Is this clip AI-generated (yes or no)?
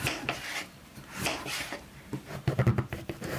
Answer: yes